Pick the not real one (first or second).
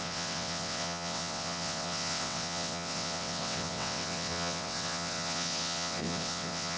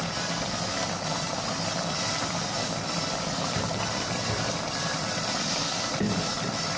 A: first